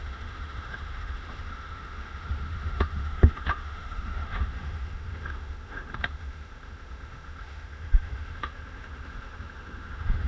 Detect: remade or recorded remade